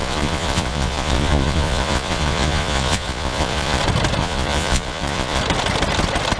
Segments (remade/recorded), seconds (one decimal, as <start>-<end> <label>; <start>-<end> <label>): 0.0-3.8 remade; 3.8-4.2 recorded; 4.2-5.4 remade; 5.4-6.4 recorded